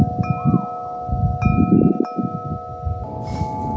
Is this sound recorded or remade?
recorded